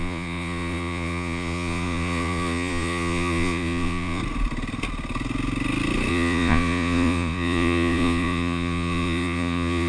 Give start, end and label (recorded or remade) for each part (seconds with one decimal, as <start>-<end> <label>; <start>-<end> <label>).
0.0-4.2 remade; 4.2-6.1 recorded; 6.1-9.9 remade